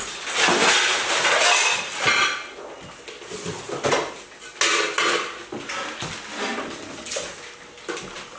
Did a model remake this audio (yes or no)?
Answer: no